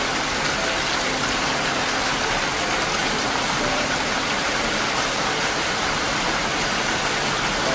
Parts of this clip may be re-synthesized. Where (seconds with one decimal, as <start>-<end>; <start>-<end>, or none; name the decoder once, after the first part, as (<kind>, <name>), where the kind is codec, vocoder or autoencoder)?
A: 3.0-6.7 (vocoder, BigVGAN v2)